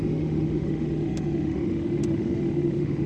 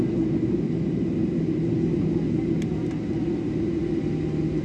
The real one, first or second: second